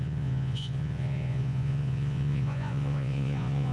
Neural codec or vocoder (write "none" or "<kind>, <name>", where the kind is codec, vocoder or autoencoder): vocoder, Vocos